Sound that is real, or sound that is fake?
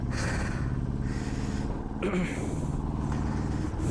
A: real